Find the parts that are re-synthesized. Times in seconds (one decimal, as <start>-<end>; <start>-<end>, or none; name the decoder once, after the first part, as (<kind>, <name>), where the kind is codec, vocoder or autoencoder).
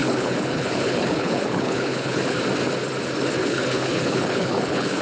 0.0-2.4 (codec, HILCodec); 3.4-5.0